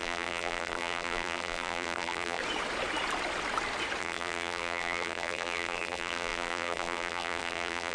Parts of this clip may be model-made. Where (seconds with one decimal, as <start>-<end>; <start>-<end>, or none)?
0.0-2.4; 4.0-7.9